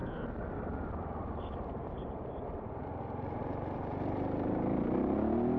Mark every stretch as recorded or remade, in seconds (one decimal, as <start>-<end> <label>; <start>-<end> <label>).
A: 0.0-5.6 recorded